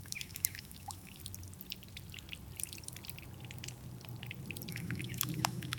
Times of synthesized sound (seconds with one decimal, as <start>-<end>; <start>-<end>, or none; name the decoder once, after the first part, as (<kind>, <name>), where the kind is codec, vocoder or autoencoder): 0.0-1.2 (autoencoder, DAC-VAE); 4.7-5.8